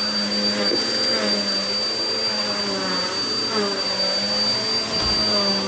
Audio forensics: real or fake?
real